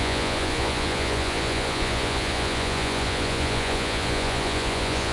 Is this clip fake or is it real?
fake